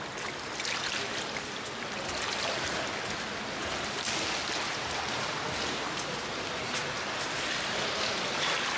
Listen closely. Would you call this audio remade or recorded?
recorded